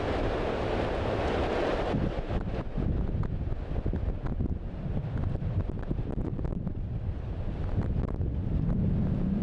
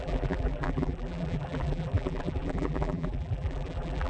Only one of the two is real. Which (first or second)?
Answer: first